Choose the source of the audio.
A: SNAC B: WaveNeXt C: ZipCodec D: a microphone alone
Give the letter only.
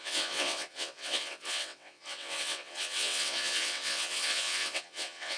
B